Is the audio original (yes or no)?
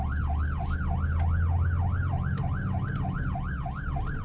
yes